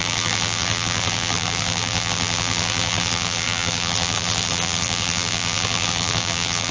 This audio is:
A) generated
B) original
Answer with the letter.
A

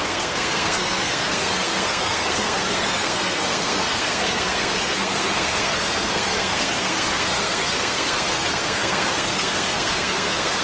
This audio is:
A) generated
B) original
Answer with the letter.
A